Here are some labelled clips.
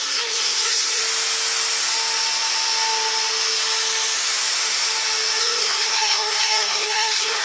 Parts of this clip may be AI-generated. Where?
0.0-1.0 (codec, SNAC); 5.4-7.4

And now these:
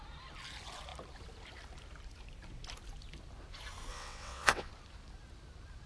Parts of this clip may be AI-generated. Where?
3.9-4.7 (vocoder, WaveNeXt)

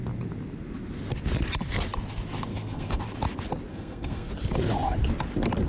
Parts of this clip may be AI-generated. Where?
2.5-3.0 (codec, SNAC); 3.7-4.3